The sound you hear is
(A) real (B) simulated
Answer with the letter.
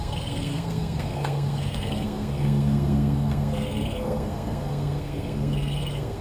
B